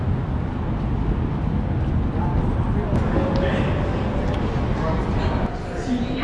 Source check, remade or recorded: recorded